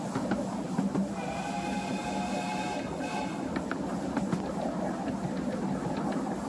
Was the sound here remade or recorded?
recorded